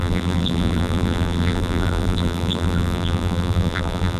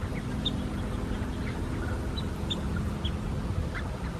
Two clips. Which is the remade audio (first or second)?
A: first